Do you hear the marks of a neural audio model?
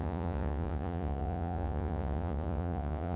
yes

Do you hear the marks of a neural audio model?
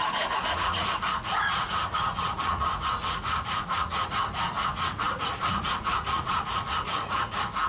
yes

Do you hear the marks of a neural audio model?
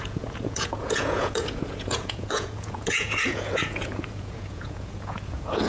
yes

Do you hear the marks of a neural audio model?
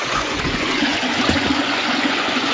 yes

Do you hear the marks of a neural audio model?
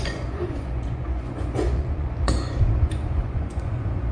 yes